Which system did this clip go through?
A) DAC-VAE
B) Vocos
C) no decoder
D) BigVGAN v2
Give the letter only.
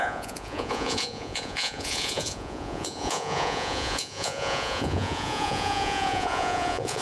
B